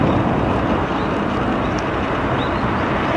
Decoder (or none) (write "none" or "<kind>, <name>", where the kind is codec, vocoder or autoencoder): none